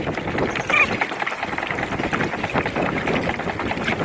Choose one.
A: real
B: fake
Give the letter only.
A